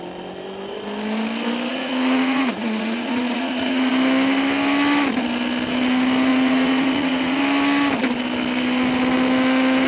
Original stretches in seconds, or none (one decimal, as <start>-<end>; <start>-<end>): 0.0-1.7; 3.9-6.3; 7.4-9.9